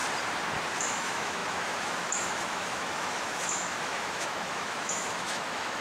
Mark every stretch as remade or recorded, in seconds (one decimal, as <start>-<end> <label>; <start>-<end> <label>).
0.0-0.8 recorded; 0.8-5.8 remade